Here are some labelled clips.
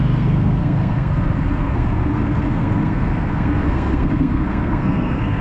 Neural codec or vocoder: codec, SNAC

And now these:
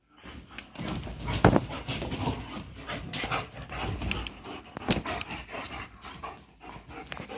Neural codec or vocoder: none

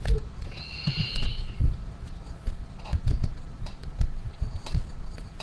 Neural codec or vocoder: vocoder, Vocos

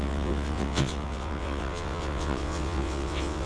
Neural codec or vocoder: vocoder, WaveNeXt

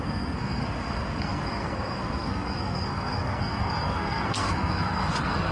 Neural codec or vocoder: codec, SNAC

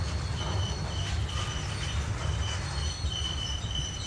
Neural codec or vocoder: none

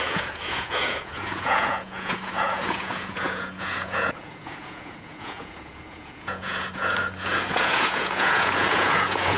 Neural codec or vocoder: vocoder, Vocos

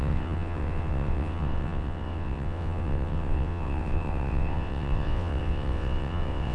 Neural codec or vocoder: vocoder, WaveNeXt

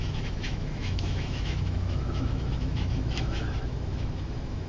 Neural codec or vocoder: autoencoder, DAC-VAE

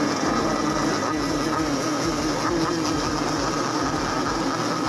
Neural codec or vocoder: none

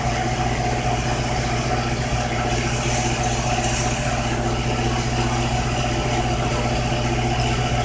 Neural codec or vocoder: none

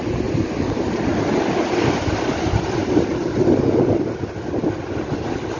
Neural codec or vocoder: none